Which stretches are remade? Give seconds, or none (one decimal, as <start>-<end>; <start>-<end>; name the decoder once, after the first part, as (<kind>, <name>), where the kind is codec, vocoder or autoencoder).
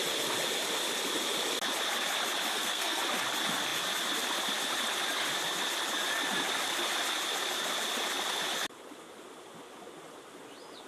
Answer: 2.5-3.0 (codec, SNAC)